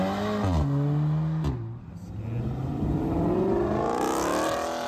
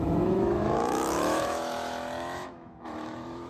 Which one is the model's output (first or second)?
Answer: second